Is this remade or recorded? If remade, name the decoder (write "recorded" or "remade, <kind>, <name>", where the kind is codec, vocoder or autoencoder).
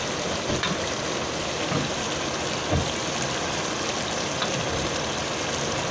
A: recorded